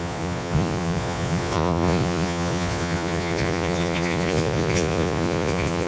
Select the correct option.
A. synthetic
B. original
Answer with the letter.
A